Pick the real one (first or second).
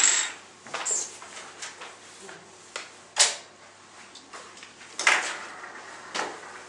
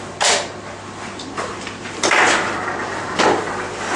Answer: first